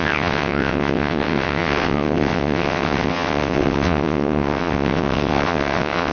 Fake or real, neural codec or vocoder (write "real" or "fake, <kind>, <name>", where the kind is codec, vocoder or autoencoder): fake, vocoder, WaveNeXt